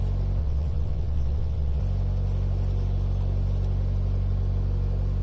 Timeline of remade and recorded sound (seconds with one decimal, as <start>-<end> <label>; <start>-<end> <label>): 0.0-0.4 recorded; 0.4-1.8 remade; 1.8-5.2 recorded